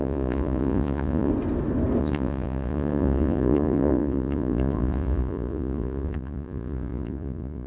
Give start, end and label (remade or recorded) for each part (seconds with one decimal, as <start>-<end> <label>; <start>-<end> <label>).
0.0-1.3 remade; 1.3-2.0 recorded; 2.0-7.7 remade